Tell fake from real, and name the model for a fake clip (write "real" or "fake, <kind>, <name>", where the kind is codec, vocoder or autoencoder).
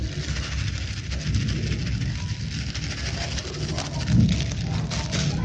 real